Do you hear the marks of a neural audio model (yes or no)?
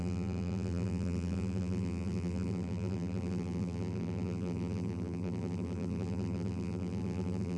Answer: yes